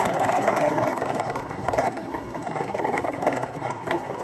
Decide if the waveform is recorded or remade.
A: remade